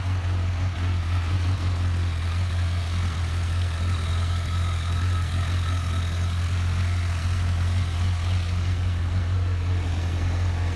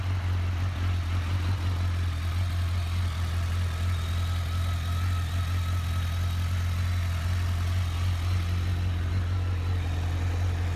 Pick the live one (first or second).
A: second